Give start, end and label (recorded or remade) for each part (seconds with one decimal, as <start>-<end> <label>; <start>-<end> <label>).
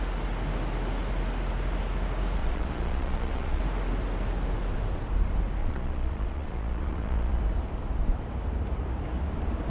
0.0-2.4 recorded; 2.4-3.6 remade; 3.6-5.6 recorded; 5.6-7.4 remade; 7.4-9.7 recorded